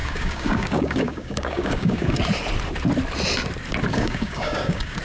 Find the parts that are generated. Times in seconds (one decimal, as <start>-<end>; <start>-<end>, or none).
0.0-2.2; 3.9-5.0